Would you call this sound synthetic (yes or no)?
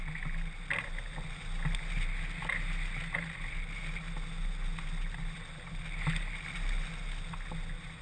no